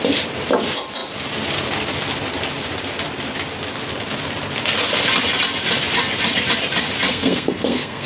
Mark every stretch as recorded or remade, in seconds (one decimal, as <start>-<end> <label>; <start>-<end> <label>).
0.0-7.1 recorded; 7.1-8.1 remade